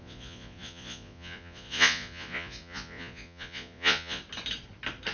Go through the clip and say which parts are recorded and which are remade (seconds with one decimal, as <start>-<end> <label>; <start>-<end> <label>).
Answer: 0.0-4.2 remade; 4.2-5.1 recorded